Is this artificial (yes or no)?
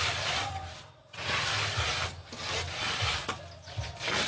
no